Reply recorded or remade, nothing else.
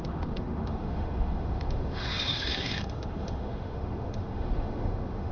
remade